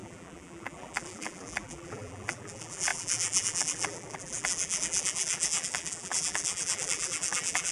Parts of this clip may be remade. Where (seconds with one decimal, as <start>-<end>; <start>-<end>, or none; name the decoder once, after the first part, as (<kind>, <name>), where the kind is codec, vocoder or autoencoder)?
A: 0.0-7.7 (vocoder, BigVGAN v2)